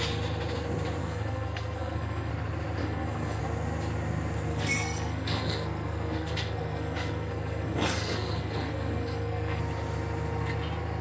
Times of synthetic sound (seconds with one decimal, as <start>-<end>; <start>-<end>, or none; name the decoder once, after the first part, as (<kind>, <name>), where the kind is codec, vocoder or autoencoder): 1.0-2.3 (codec, SNAC); 2.8-3.4; 4.5-9.6